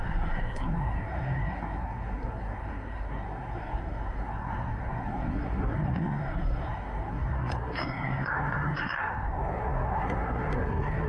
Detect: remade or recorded remade